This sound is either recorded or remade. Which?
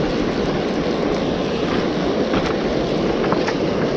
recorded